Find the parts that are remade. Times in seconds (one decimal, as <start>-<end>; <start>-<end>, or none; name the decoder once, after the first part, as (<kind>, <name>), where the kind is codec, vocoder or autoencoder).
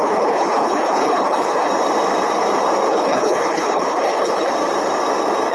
0.0-1.7 (codec, HILCodec); 2.9-4.5